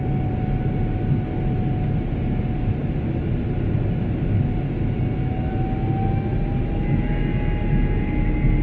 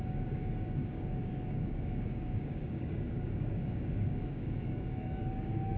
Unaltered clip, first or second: first